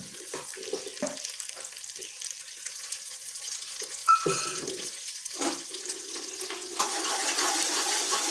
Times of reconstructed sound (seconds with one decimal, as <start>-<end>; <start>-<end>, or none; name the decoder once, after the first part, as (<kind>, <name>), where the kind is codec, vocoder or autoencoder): 0.0-0.5 (vocoder, Vocos); 2.4-7.2; 7.7-8.3